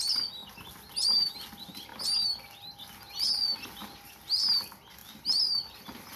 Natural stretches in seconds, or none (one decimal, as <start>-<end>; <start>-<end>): 0.0-6.2